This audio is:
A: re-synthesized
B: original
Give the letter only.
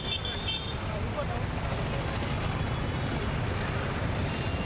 B